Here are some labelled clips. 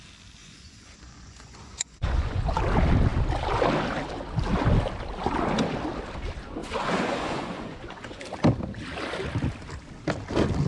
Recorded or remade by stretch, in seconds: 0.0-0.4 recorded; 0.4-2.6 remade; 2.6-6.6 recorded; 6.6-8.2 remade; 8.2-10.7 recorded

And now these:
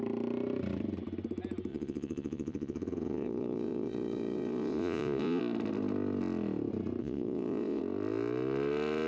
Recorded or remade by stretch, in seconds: 0.0-1.7 recorded; 1.7-5.4 remade; 5.4-7.0 recorded; 7.0-7.8 remade; 7.8-9.1 recorded